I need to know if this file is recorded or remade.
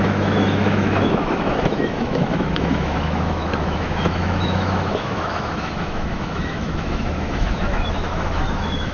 remade